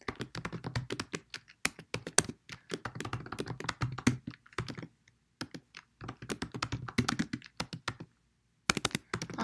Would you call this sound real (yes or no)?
yes